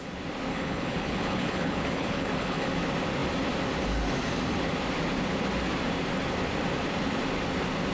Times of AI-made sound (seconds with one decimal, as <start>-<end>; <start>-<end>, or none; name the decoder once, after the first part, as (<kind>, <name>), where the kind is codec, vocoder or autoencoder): 0.5-2.7 (codec, HILCodec)